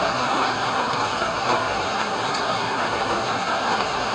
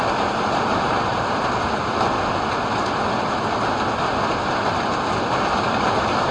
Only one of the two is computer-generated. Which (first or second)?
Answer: first